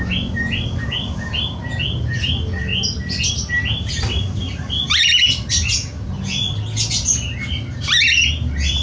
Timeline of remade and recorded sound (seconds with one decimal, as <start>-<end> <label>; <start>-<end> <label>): 0.0-8.8 recorded